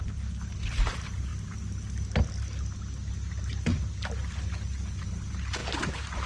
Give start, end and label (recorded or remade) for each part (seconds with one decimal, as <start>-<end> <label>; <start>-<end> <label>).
0.0-5.6 recorded; 5.6-6.3 remade

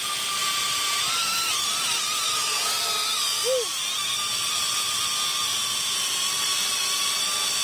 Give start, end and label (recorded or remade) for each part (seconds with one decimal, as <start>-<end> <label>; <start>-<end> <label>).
0.0-0.4 recorded; 0.4-2.0 remade; 2.0-7.6 recorded

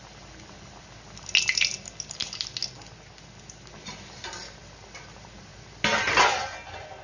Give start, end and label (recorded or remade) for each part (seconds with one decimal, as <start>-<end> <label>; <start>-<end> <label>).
0.0-7.0 recorded